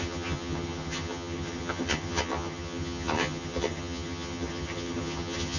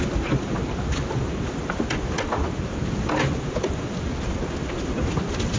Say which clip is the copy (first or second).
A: first